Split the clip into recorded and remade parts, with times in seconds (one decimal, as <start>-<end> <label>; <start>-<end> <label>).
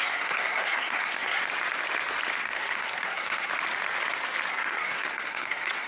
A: 0.0-1.4 remade; 1.4-2.4 recorded; 2.4-3.5 remade; 3.5-4.5 recorded; 4.5-5.9 remade